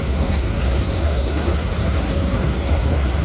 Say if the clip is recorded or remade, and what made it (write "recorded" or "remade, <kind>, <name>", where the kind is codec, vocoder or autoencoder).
remade, codec, SNAC